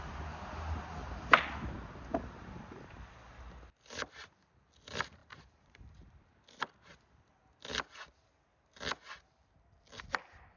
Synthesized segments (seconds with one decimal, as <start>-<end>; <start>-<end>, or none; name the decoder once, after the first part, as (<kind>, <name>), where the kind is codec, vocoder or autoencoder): 2.1-3.3 (vocoder, BigVGAN v2); 5.2-6.3